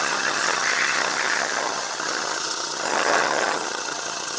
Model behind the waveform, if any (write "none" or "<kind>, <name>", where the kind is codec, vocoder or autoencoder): vocoder, HiFi-GAN